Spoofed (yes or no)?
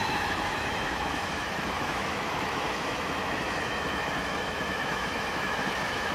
yes